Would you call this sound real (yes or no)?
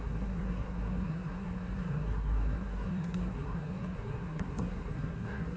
no